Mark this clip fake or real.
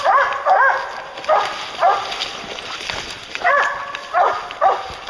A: real